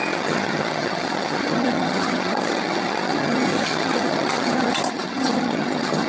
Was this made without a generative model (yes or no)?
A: no